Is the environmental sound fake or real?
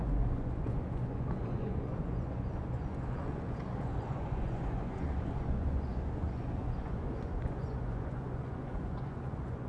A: fake